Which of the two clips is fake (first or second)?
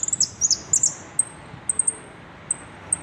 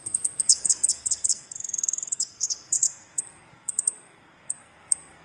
second